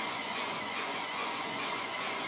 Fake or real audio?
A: fake